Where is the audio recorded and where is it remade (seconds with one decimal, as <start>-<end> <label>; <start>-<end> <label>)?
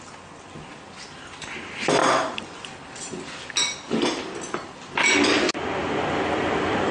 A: 0.0-6.9 recorded